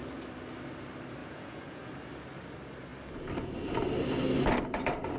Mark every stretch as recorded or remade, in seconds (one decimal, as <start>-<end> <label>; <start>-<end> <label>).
0.0-1.2 recorded; 1.2-1.8 remade; 1.8-5.2 recorded